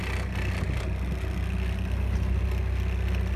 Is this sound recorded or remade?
recorded